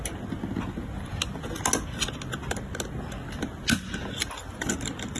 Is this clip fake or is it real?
real